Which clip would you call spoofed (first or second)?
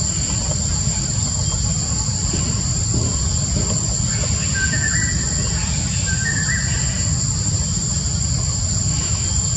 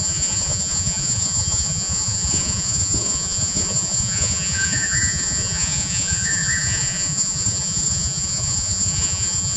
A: second